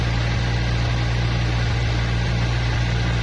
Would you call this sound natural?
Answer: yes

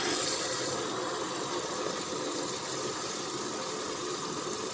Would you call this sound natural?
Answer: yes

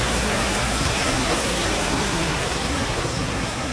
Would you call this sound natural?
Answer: no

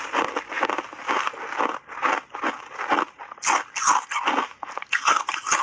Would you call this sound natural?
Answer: yes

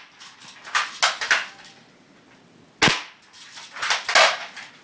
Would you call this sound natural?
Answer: yes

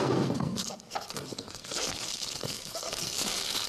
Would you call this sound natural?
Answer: no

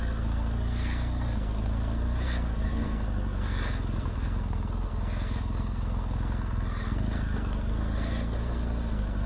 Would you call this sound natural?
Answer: no